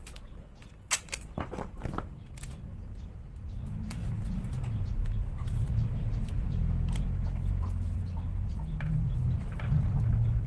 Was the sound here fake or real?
real